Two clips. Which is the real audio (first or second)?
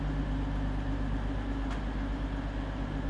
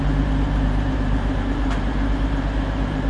first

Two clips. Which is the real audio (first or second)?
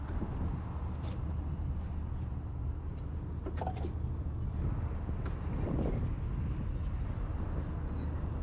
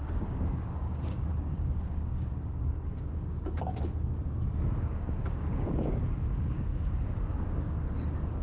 first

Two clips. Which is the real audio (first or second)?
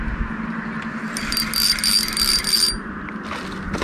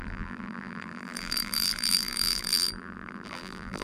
first